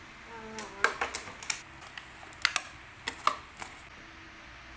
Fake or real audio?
real